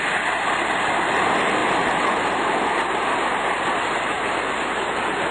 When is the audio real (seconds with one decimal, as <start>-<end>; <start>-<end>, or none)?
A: 0.0-5.3